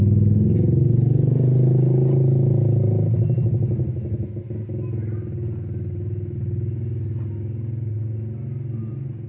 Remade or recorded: recorded